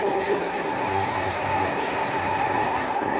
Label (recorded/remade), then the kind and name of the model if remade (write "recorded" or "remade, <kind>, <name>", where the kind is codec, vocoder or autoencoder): remade, codec, SNAC